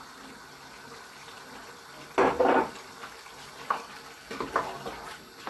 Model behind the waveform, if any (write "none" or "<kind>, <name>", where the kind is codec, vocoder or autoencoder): none